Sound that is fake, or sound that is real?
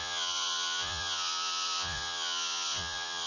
fake